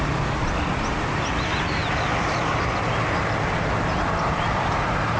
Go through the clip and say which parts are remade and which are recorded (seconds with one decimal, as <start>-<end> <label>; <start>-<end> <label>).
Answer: 0.0-5.2 recorded